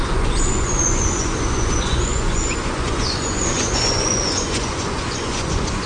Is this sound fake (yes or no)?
yes